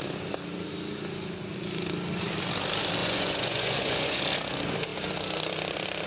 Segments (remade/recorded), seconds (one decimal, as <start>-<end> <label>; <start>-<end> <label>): 0.0-3.0 recorded; 3.0-4.2 remade; 4.2-6.1 recorded